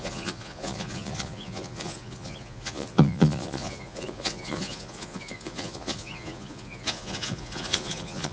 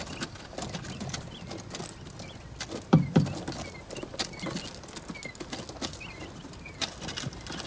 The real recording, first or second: second